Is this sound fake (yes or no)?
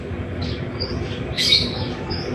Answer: yes